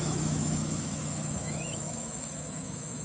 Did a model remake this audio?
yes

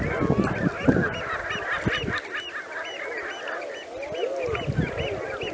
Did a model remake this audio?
no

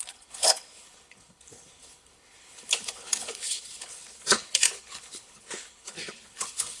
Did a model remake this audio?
yes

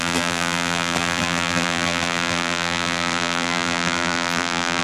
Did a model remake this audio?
yes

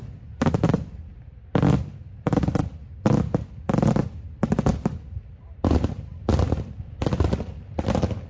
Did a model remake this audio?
no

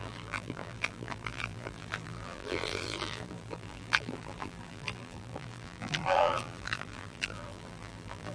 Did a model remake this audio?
yes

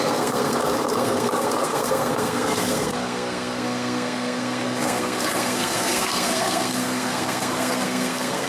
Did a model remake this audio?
yes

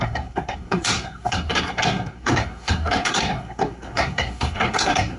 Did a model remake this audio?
yes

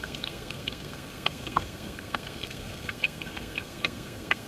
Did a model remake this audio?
yes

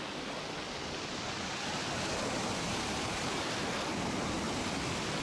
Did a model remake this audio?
no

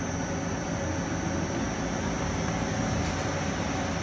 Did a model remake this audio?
no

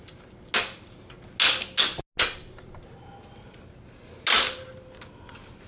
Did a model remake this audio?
no